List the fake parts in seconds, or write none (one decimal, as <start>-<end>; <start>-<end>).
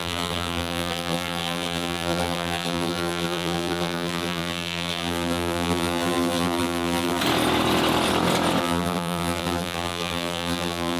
0.0-7.2; 8.6-11.0